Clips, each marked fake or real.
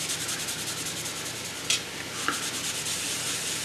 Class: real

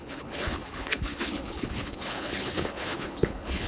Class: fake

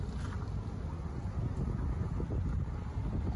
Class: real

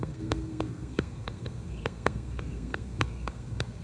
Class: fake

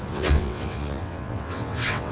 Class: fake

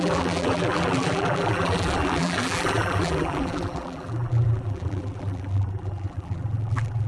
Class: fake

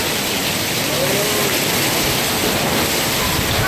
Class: real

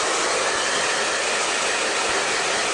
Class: real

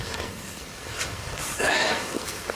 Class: fake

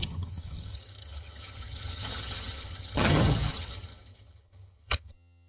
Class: fake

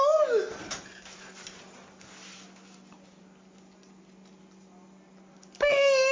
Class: real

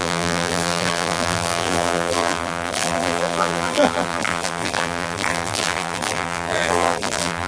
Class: fake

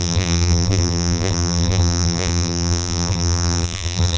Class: fake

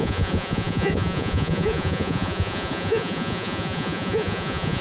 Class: fake